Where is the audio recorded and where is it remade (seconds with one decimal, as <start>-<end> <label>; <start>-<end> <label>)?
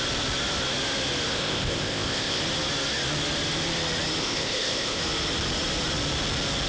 0.0-1.3 recorded; 1.3-2.4 remade; 2.4-4.2 recorded; 4.2-5.0 remade; 5.0-6.7 recorded